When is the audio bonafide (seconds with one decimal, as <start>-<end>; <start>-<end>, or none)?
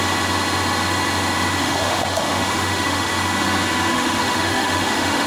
0.0-1.6; 3.1-3.9